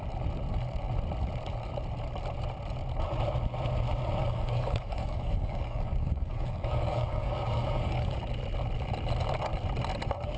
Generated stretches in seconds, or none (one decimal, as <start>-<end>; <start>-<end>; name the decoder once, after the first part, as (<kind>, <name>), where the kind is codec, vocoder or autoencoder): 4.2-8.2 (codec, DAC)